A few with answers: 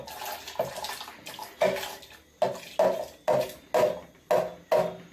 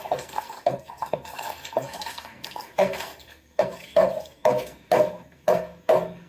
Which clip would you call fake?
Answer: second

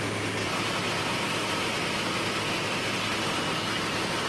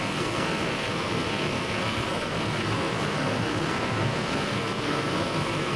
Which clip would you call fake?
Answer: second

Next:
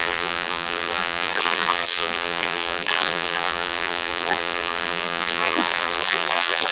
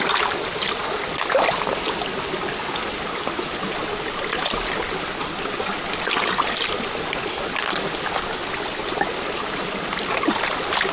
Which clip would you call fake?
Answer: first